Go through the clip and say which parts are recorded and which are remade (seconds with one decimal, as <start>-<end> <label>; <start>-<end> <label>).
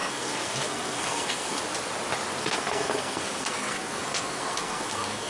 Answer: 0.0-1.6 remade; 1.6-2.4 recorded; 2.4-5.3 remade